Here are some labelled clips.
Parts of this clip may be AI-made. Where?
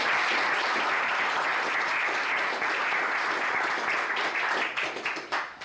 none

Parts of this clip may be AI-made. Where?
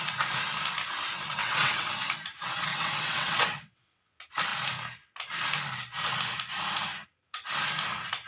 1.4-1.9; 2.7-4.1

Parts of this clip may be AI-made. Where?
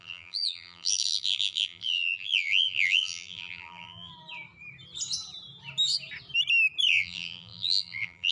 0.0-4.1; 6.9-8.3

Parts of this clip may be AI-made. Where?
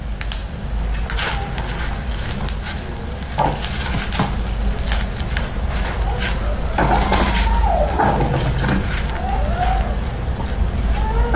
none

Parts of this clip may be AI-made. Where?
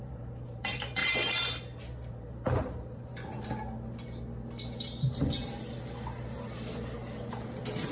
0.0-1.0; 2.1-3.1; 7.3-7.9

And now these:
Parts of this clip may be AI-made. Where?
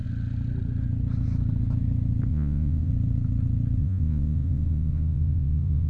2.3-2.9; 3.8-5.9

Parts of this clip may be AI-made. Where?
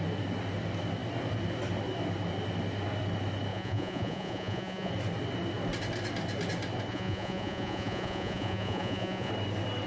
3.5-4.9; 6.9-9.3